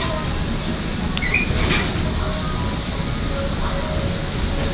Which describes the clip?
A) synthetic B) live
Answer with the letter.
B